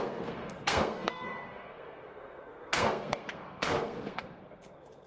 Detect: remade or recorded remade